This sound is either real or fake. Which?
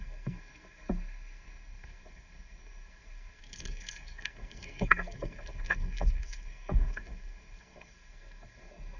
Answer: fake